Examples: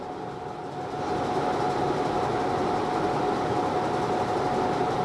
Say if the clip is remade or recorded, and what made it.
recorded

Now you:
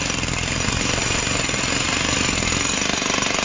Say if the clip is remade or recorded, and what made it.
recorded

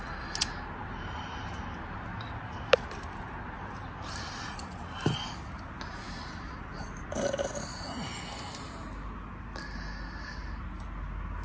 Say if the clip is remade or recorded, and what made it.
recorded